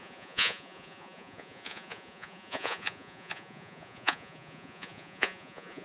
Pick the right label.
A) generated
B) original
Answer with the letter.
A